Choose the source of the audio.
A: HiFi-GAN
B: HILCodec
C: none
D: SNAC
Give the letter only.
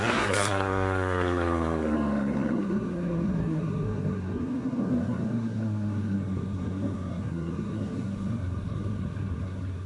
D